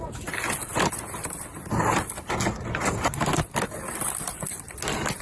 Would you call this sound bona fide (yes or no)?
yes